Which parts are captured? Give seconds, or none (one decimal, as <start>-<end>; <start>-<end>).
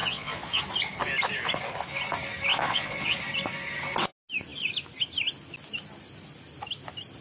0.6-2.5; 3.2-7.2